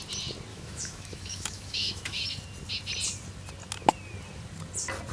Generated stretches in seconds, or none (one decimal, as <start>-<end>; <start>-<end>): 0.5-2.2